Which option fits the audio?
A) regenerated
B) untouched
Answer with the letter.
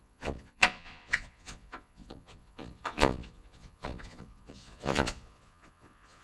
A